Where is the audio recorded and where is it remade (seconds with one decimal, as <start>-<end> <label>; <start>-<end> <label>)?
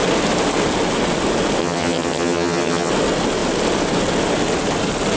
0.0-1.6 recorded; 1.6-2.9 remade; 2.9-5.2 recorded